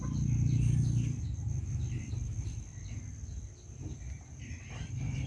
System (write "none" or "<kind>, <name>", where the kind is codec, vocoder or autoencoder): none